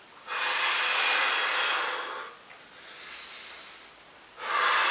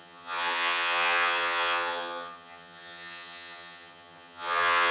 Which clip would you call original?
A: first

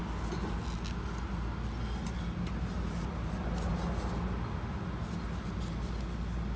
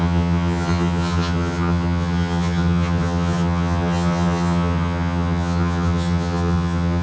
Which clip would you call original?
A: first